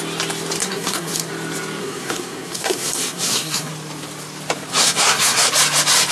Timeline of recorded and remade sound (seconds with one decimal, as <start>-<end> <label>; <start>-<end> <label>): 0.0-0.6 recorded; 0.6-1.3 remade; 1.3-1.8 recorded; 1.8-3.7 remade; 3.7-4.7 recorded; 4.7-5.5 remade; 5.5-6.1 recorded